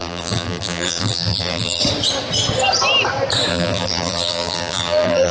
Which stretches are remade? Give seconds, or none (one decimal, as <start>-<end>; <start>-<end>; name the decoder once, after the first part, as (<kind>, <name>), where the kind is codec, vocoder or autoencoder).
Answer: 0.0-1.8 (vocoder, BigVGAN v2); 3.5-5.3